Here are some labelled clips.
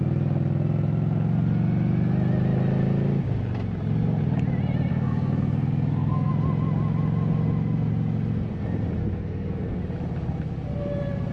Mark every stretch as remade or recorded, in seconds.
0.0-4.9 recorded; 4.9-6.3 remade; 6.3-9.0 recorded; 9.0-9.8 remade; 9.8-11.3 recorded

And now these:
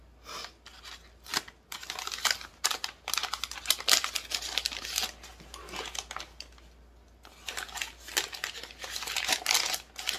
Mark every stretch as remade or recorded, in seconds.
0.0-10.2 recorded

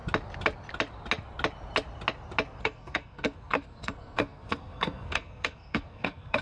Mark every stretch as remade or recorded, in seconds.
0.0-2.6 recorded; 2.6-6.4 remade

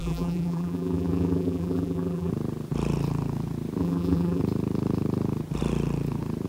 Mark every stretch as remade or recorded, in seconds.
0.0-2.3 remade; 2.3-3.8 recorded; 3.8-4.4 remade; 4.4-6.5 recorded

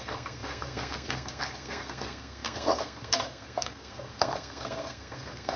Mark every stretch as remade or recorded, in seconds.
0.0-5.6 remade

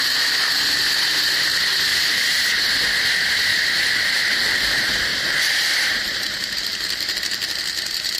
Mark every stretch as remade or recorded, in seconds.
0.0-1.9 recorded; 1.9-2.6 remade; 2.6-3.5 recorded; 3.5-4.6 remade; 4.6-5.1 recorded; 5.1-6.6 remade; 6.6-8.2 recorded

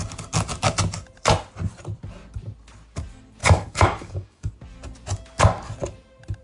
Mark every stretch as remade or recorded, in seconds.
0.0-3.4 recorded; 3.4-4.5 remade; 4.5-6.4 recorded

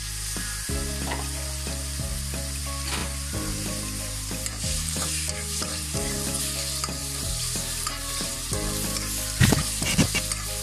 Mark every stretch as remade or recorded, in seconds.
0.0-3.0 recorded; 3.0-6.4 remade; 6.4-7.0 recorded; 7.0-8.5 remade; 8.5-10.6 recorded